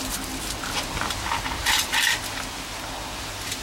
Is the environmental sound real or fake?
real